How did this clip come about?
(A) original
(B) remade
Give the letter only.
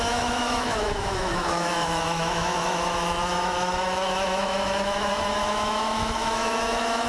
B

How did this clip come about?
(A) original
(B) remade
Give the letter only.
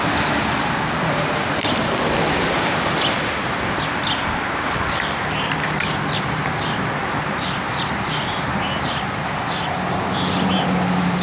A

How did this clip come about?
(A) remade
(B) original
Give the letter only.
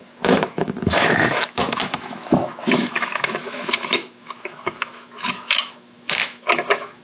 A